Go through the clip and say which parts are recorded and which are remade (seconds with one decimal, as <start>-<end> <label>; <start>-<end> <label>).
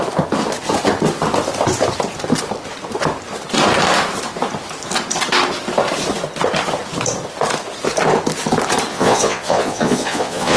0.0-8.9 recorded; 8.9-10.6 remade